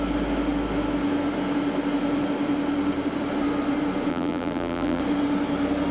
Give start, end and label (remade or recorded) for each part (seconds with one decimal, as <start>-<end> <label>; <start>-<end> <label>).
0.0-4.1 recorded; 4.1-5.0 remade; 5.0-5.9 recorded